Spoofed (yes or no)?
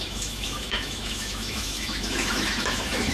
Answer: yes